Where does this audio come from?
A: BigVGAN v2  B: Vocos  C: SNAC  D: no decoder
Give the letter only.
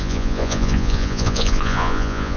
B